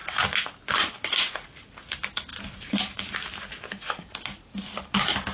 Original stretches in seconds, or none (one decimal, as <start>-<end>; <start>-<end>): 0.0-5.3